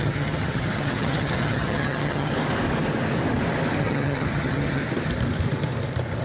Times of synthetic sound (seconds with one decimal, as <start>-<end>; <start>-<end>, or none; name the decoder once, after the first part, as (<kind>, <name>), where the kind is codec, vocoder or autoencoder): 0.0-2.3 (vocoder, HiFi-GAN); 3.8-4.8

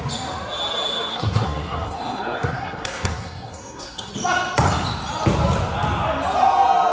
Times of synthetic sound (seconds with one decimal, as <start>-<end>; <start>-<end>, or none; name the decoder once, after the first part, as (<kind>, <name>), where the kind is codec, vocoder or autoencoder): 1.1-4.1 (codec, SNAC)